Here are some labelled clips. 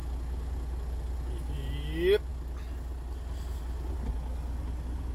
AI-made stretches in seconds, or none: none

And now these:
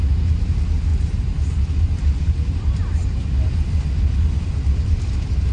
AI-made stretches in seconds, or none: none

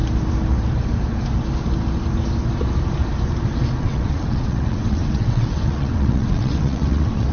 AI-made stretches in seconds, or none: 3.8-7.3 (vocoder, WaveNeXt)

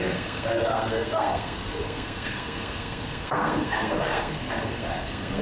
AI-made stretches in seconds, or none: 0.0-5.4 (codec, SNAC)

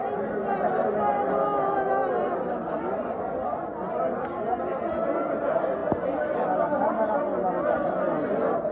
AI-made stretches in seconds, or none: none

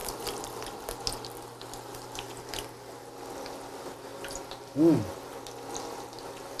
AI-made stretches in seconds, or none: none

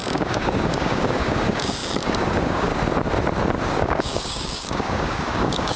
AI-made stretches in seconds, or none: 0.0-2.7 (codec, DAC); 3.7-5.8

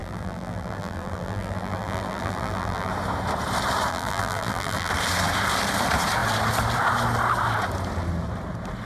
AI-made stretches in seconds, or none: 0.0-2.9 (vocoder, BigVGAN v2); 3.9-4.9